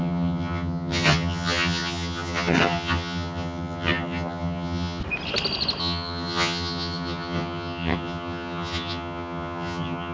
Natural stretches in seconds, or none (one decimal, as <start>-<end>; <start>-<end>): 5.0-5.8